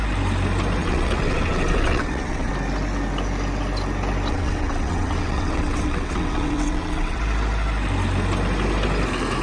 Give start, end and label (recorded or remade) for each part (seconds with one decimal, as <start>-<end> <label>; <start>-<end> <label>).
0.0-0.8 recorded; 0.8-2.5 remade; 2.5-4.3 recorded; 4.3-7.2 remade; 7.2-9.4 recorded